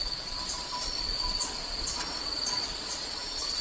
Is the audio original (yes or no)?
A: no